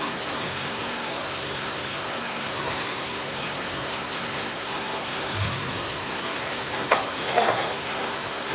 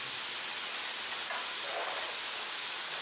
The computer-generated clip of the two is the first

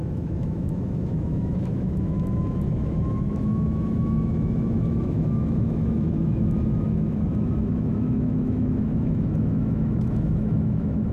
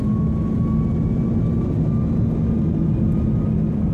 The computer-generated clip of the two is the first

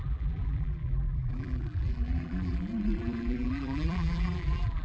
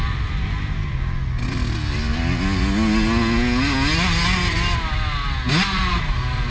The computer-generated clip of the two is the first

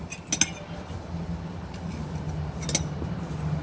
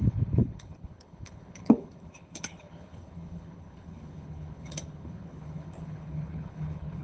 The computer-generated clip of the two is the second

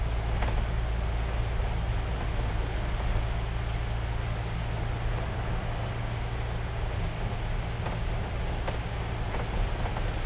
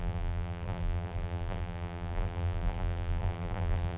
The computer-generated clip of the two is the second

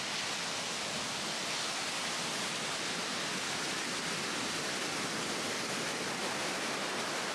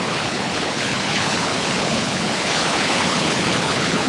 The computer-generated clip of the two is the second